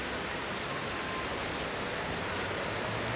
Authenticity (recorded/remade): recorded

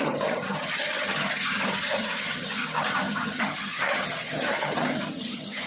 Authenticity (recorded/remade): remade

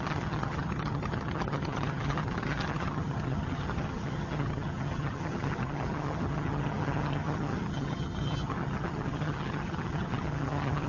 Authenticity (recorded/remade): remade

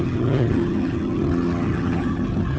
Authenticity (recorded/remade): remade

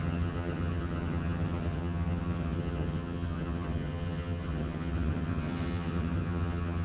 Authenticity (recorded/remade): remade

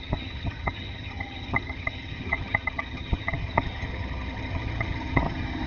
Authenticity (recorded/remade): remade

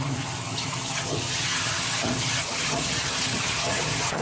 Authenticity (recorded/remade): remade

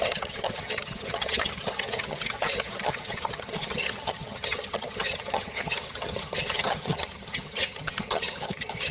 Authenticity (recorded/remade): remade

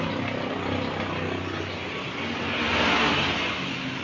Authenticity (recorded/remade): recorded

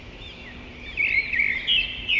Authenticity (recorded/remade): recorded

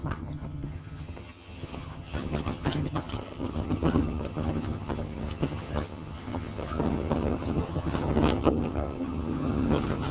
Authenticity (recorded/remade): remade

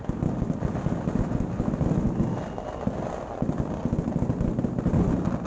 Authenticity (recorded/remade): recorded